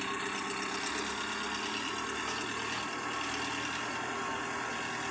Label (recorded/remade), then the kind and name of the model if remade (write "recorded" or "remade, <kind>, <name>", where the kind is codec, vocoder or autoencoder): recorded